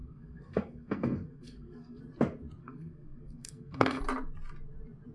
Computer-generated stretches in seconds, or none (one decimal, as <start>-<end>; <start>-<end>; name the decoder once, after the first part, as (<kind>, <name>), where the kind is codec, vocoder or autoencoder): 0.0-2.0 (codec, SNAC); 2.6-4.0